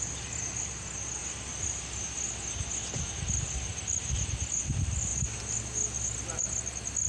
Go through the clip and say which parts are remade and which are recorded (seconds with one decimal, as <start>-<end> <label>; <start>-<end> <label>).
0.0-7.1 recorded

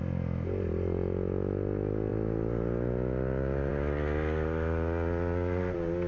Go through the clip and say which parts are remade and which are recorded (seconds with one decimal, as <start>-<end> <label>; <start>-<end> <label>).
0.0-6.1 recorded

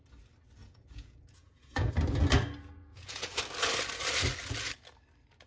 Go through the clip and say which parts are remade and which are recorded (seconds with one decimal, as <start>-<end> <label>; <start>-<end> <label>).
0.0-0.6 recorded; 0.6-1.9 remade; 1.9-2.9 recorded; 2.9-3.4 remade; 3.4-5.5 recorded

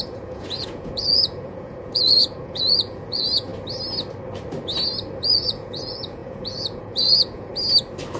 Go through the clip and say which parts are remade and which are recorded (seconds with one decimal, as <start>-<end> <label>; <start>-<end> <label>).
0.0-3.5 remade; 3.5-5.2 recorded; 5.2-7.5 remade; 7.5-8.2 recorded

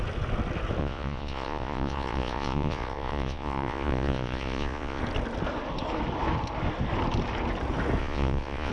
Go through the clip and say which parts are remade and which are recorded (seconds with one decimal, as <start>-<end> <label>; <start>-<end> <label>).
0.0-0.8 recorded; 0.8-5.0 remade; 5.0-8.0 recorded; 8.0-8.7 remade

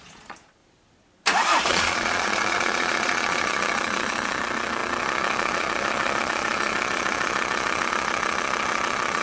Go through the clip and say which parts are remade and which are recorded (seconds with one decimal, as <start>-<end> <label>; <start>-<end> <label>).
0.0-0.6 remade; 0.6-1.7 recorded; 1.7-9.2 remade